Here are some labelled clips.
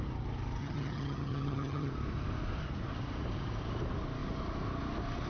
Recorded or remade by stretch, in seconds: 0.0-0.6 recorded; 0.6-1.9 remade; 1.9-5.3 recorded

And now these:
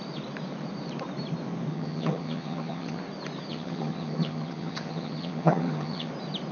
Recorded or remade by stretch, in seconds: 0.0-1.7 recorded; 1.7-3.0 remade; 3.0-3.5 recorded; 3.5-6.1 remade; 6.1-6.5 recorded

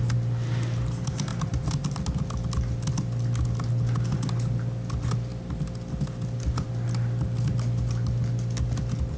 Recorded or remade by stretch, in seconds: 0.0-9.2 recorded